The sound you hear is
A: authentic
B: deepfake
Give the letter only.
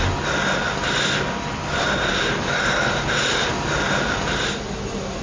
A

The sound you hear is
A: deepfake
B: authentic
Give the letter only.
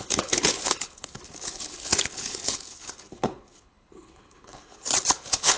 A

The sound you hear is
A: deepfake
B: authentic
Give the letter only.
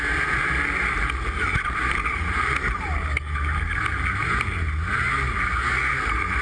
B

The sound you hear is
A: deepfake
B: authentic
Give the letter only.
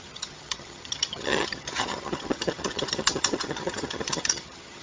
A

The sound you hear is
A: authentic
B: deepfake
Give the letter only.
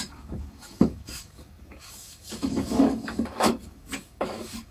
B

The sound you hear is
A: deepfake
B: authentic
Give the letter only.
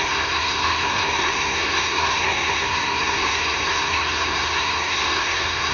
A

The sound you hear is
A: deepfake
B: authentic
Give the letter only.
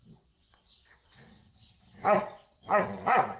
A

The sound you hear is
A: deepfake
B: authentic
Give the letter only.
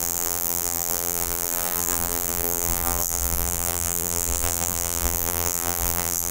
A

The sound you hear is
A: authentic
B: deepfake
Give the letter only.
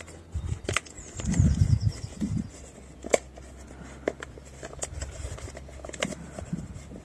A